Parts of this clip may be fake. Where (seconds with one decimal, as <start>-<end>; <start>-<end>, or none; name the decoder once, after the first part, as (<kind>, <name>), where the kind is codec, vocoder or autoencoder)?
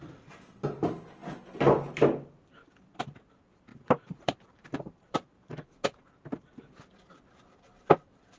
3.7-5.5 (vocoder, BigVGAN v2)